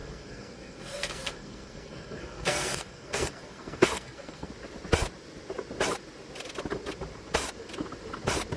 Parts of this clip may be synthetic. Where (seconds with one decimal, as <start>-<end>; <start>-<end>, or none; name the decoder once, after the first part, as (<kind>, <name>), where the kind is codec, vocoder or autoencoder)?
0.0-4.5 (codec, SNAC)